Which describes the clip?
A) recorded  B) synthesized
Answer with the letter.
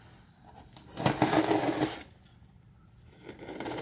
A